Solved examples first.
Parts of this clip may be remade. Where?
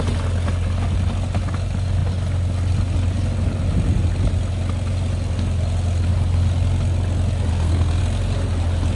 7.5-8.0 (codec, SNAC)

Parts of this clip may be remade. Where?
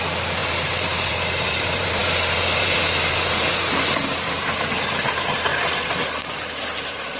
0.0-5.5 (vocoder, BigVGAN v2); 6.4-7.2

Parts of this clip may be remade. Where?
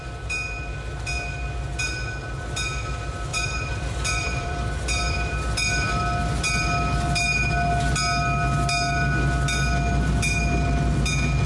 3.3-5.4 (vocoder, BigVGAN v2)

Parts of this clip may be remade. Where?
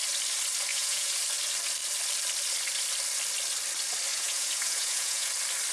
0.7-1.2 (vocoder, Vocos); 4.1-5.3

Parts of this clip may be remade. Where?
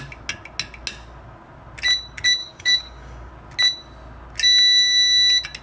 2.4-3.3 (codec, DAC)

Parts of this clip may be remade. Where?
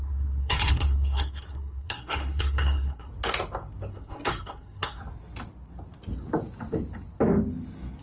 0.0-3.1 (codec, SNAC); 3.9-5.0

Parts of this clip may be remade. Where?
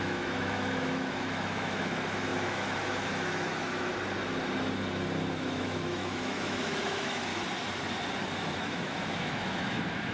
0.0-3.9 (autoencoder, DAC-VAE); 5.3-7.3; 8.3-10.1